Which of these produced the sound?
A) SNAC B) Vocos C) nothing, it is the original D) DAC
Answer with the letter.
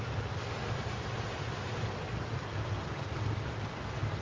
C